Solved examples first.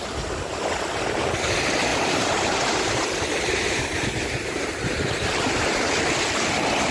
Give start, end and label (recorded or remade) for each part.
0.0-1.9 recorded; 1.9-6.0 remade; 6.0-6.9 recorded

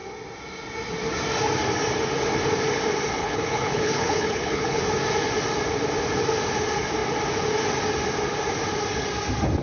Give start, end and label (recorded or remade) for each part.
0.0-3.2 recorded; 3.2-4.8 remade; 4.8-9.6 recorded

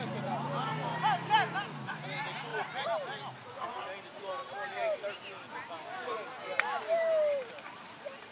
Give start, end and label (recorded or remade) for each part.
0.0-8.3 recorded

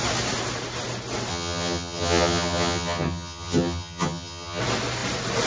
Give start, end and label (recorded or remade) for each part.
0.0-1.3 recorded; 1.3-4.6 remade; 4.6-5.5 recorded

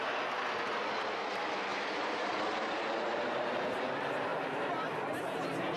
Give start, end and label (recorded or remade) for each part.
0.0-1.7 recorded; 1.7-3.8 remade; 3.8-5.8 recorded

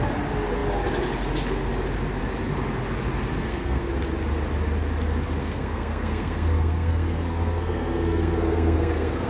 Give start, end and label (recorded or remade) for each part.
0.0-3.4 recorded; 3.4-3.9 remade; 3.9-5.4 recorded; 5.4-9.3 remade

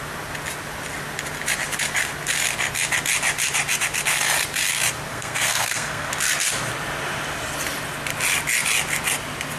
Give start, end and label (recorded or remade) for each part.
0.0-5.1 recorded; 5.1-6.1 remade; 6.1-9.6 recorded